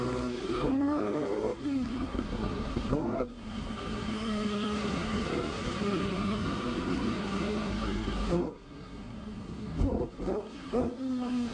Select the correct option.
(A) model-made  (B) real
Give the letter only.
A